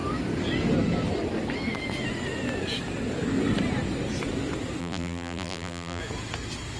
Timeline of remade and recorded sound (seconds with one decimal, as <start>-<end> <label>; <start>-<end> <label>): 0.0-4.8 recorded; 4.8-6.0 remade; 6.0-6.8 recorded